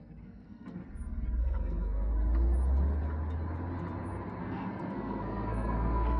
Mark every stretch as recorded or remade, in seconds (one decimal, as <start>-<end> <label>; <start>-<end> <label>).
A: 0.0-0.8 remade; 0.8-1.4 recorded; 1.4-2.1 remade; 2.1-4.4 recorded; 4.4-6.2 remade